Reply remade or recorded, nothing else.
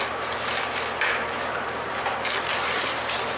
recorded